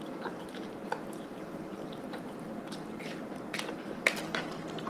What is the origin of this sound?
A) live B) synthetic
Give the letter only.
A